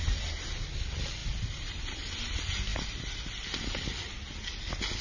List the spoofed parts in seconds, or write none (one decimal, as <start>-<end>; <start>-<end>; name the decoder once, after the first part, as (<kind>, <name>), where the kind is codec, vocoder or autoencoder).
none